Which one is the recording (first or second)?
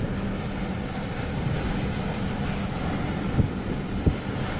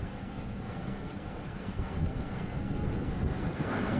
first